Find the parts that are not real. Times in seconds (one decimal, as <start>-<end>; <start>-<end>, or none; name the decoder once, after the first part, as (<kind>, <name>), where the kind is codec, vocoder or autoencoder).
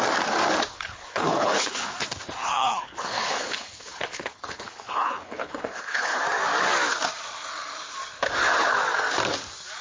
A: 0.7-1.9 (codec, HILCodec); 2.4-6.2